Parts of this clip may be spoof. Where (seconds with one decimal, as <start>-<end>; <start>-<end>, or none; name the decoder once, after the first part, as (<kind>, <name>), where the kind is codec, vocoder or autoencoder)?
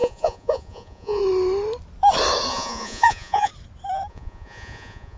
0.0-1.2 (vocoder, Vocos); 2.5-3.5; 4.1-5.2